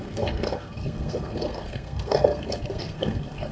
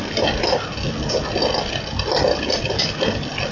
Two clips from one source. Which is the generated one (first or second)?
first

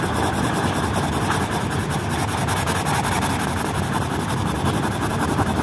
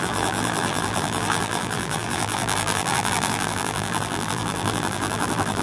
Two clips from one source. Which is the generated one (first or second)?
second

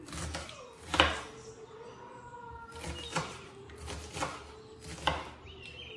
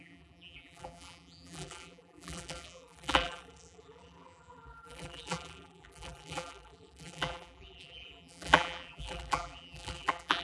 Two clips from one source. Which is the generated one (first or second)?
second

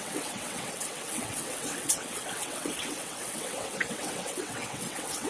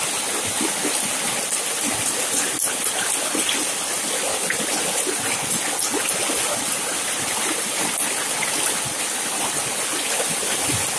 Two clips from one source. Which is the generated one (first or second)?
first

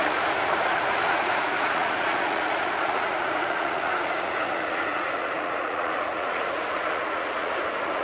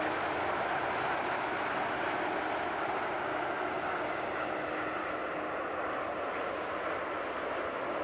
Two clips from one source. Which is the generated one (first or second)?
first